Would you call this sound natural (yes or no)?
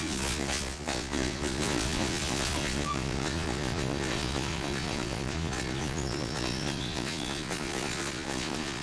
no